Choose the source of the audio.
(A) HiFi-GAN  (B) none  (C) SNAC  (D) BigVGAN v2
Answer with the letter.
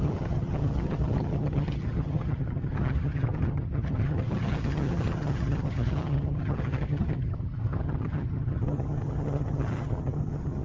A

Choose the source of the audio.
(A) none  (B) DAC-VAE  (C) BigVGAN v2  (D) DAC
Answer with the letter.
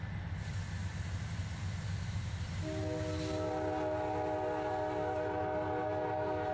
A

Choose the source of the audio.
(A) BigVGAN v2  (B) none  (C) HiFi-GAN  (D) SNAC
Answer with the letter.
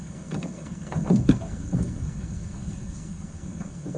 D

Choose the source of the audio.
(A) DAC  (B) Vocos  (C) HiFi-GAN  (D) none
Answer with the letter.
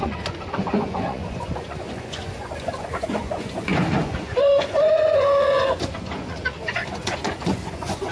B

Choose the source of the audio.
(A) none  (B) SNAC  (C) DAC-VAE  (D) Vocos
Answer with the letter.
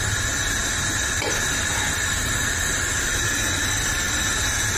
A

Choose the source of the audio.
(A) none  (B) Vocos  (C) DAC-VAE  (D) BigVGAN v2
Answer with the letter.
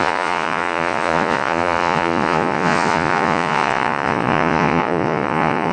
B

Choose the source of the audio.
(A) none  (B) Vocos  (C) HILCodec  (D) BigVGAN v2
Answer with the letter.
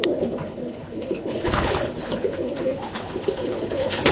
C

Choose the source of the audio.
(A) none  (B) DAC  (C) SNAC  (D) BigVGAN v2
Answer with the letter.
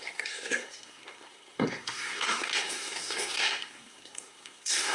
C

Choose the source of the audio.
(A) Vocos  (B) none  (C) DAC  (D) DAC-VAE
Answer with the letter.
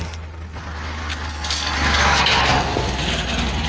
B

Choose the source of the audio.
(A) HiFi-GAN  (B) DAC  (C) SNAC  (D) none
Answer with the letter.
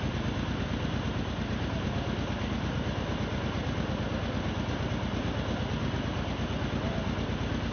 D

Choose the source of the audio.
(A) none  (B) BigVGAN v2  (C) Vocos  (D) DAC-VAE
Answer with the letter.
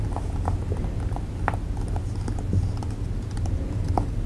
A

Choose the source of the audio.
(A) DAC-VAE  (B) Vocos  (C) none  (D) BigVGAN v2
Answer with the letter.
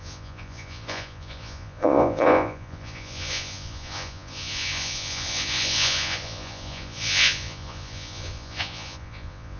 B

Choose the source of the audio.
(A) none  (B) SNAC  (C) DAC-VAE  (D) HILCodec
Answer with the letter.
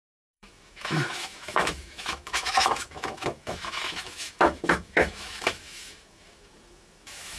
C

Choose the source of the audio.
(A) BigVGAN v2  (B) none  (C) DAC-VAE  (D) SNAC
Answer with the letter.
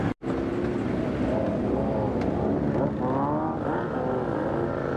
B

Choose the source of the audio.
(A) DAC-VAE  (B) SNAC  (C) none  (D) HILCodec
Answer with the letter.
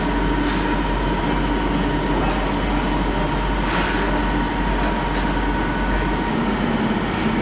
C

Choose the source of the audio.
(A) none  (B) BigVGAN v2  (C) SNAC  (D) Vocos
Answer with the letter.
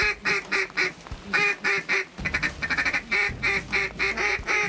A